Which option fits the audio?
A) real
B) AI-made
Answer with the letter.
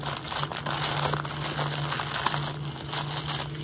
A